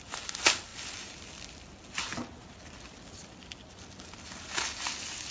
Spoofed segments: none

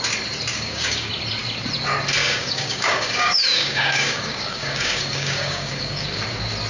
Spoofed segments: 0.5-1.1; 2.2-6.2

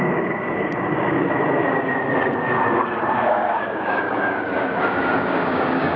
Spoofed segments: 0.0-1.4; 3.1-6.0

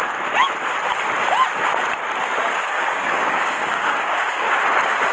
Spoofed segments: 2.4-4.6

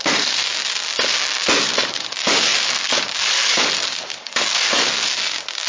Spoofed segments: 0.0-0.6; 1.9-5.7

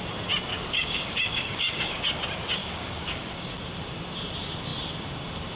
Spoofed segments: 0.5-2.2; 2.6-3.3

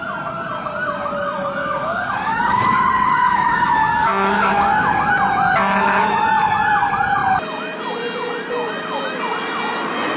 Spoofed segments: 1.6-5.1

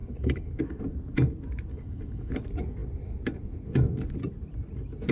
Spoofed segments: 0.0-0.8; 1.7-2.3